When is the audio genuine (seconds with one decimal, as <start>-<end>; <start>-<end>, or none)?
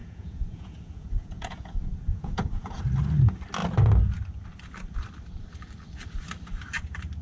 2.8-7.2